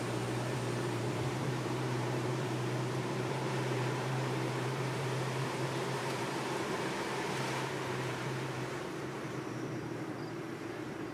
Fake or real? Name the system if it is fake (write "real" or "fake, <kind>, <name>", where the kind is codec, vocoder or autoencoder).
fake, vocoder, BigVGAN v2